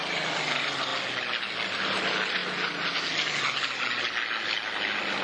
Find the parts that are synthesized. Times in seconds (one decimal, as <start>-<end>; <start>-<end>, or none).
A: none